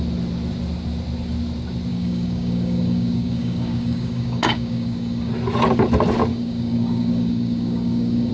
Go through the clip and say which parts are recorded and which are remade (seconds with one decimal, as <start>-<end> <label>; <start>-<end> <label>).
0.0-1.9 recorded; 1.9-5.3 remade; 5.3-6.3 recorded; 6.3-8.3 remade